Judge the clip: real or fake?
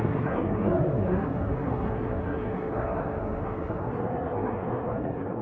fake